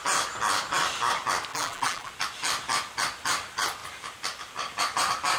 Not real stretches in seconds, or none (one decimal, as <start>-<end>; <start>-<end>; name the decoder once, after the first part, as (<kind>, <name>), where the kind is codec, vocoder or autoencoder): 1.5-2.1 (vocoder, BigVGAN v2)